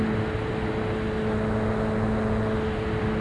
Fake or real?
real